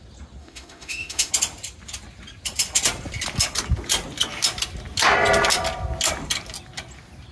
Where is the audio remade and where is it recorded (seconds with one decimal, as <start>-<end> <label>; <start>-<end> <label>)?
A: 0.0-0.4 recorded; 0.4-1.3 remade; 1.3-7.3 recorded